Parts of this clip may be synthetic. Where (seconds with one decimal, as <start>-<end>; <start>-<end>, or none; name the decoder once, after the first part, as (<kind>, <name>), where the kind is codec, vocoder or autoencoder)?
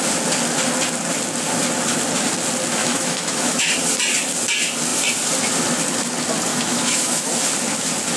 2.8-3.7 (autoencoder, DAC-VAE); 6.5-7.3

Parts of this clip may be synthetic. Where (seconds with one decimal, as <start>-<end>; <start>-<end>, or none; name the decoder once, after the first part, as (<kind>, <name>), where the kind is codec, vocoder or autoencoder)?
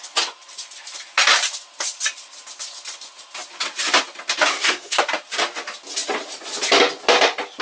4.5-5.0 (codec, SNAC)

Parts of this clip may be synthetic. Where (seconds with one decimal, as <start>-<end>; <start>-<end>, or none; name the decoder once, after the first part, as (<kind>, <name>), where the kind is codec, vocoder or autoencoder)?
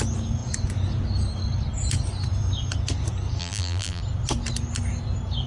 3.4-4.0 (vocoder, BigVGAN v2)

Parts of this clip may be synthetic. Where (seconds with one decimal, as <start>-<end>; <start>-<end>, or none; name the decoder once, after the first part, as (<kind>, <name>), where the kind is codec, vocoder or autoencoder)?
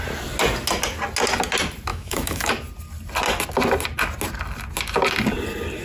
1.9-2.5 (autoencoder, DAC-VAE)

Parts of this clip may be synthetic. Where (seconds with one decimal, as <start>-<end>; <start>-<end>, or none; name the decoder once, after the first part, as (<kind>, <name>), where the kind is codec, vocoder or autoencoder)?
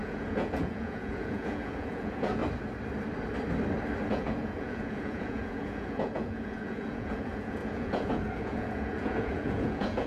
0.0-2.4 (vocoder, Vocos); 4.1-10.1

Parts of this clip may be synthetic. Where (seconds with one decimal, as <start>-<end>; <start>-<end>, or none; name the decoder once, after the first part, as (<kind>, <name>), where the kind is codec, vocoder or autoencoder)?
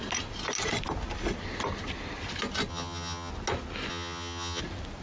2.7-3.3 (vocoder, HiFi-GAN); 3.9-4.6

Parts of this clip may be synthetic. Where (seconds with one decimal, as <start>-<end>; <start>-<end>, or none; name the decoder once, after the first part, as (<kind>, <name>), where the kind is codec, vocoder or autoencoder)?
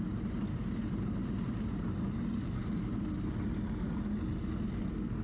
none